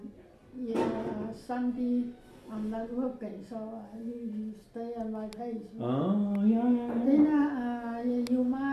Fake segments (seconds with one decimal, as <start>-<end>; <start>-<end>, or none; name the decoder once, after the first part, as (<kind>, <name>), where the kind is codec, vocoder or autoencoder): none